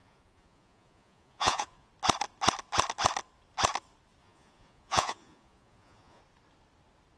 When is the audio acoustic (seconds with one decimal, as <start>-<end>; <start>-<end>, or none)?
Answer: 1.9-4.2; 6.2-7.2